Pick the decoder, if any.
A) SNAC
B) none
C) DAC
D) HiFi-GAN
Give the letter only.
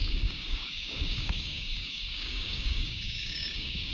C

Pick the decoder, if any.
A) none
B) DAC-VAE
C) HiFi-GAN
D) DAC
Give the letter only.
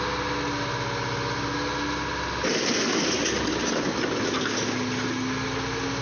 A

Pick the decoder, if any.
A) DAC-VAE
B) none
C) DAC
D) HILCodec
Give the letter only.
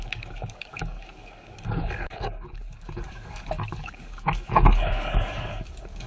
C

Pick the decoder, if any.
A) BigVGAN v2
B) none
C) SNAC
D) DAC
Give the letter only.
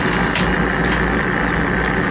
B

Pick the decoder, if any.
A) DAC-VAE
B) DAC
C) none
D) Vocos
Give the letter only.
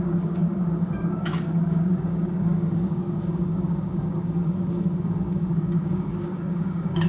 B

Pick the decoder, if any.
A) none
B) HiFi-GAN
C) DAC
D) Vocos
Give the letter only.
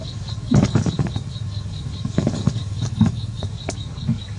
C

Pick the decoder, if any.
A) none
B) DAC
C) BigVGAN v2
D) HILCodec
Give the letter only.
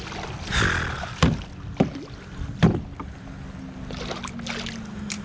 A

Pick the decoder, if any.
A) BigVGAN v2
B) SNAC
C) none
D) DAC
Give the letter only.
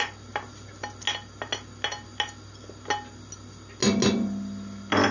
C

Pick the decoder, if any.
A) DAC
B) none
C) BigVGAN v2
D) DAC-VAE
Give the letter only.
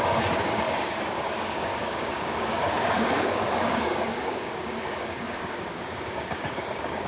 A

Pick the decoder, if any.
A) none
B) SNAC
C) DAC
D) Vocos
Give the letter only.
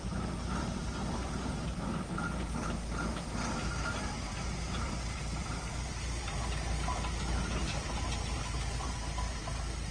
A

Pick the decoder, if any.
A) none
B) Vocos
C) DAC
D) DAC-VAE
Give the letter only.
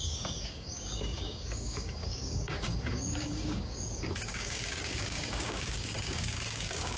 C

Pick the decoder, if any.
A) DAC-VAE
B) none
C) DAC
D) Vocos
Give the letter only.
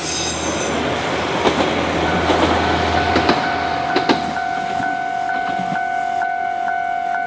B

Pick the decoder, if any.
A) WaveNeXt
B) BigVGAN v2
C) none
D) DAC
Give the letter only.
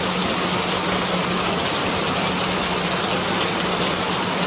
C